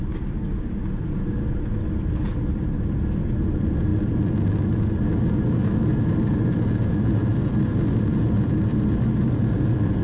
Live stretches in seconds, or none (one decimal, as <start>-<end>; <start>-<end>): 0.0-10.0